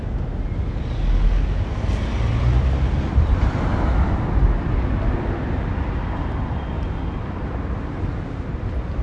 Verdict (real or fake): real